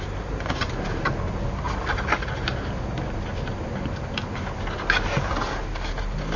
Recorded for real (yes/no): yes